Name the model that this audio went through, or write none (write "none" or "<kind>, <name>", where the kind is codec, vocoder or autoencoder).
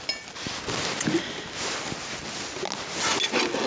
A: none